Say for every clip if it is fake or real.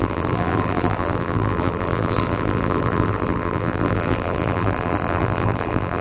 fake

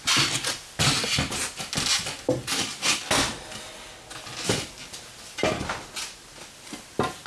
real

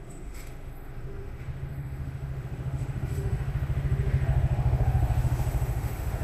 fake